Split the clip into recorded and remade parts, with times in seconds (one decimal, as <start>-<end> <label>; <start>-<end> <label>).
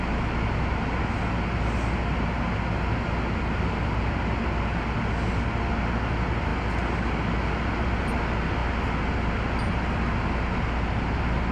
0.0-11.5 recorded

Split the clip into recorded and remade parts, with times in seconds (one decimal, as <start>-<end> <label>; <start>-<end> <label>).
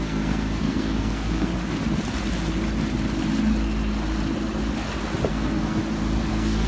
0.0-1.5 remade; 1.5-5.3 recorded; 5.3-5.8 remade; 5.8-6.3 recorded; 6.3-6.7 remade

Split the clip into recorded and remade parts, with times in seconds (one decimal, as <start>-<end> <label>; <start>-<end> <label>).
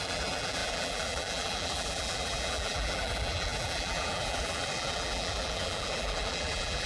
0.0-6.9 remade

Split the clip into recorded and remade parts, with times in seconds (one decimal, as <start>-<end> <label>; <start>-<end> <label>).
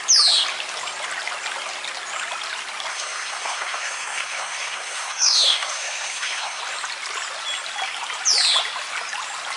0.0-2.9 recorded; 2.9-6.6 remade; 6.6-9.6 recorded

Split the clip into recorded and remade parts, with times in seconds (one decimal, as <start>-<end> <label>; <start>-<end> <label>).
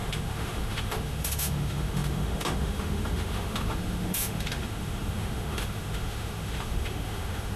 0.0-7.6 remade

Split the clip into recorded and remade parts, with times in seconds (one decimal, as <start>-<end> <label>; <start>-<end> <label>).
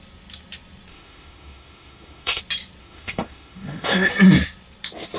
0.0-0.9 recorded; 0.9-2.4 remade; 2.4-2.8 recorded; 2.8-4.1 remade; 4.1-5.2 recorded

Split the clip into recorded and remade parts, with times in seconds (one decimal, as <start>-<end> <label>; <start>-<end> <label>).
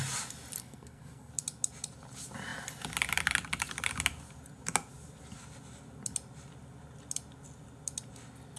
0.0-0.6 recorded; 0.6-1.3 remade; 1.3-8.6 recorded